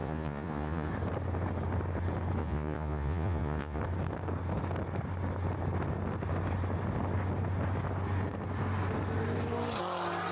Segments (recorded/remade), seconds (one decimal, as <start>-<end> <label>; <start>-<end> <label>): 0.0-0.9 remade; 0.9-2.4 recorded; 2.4-3.8 remade; 3.8-10.3 recorded